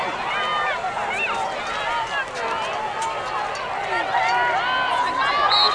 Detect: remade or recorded recorded